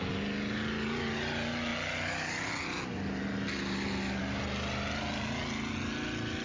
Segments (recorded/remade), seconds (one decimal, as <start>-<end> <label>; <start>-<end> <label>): 0.0-6.4 recorded